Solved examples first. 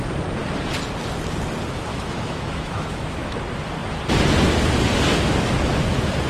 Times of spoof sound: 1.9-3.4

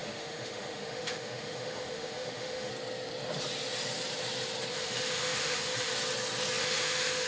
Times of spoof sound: 0.0-2.7; 4.7-5.9; 6.6-7.3

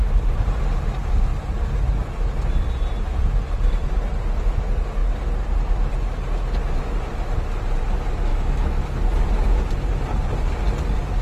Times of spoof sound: 8.3-8.9

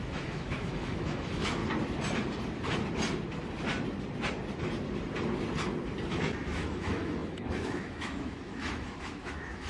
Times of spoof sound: 0.0-1.6; 6.1-9.7

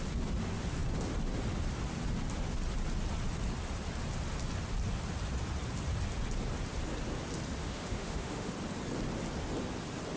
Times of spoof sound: 7.6-8.5

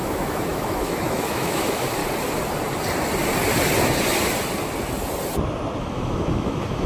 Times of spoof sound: 0.0-2.0; 5.8-6.9

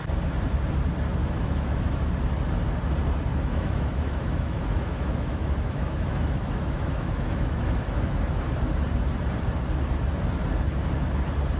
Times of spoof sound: 1.2-2.1; 3.3-8.4

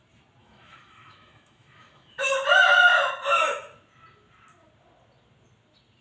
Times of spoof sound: 0.4-2.3